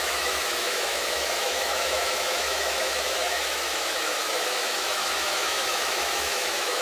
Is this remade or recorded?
remade